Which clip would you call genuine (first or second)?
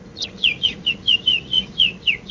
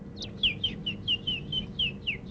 second